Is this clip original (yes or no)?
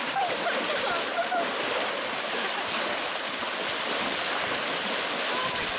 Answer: yes